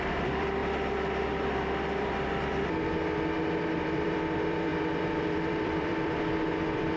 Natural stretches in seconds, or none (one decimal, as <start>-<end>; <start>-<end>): 0.6-3.8